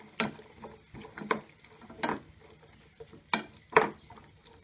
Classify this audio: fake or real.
real